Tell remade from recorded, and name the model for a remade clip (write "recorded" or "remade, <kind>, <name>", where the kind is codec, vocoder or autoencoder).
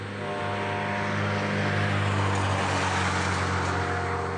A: recorded